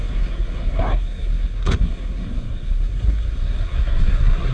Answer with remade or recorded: remade